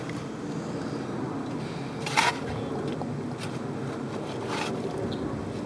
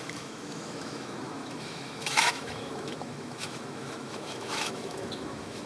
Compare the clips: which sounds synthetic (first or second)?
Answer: second